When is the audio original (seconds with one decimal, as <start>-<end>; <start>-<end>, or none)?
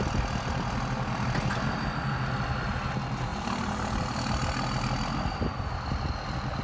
0.0-6.6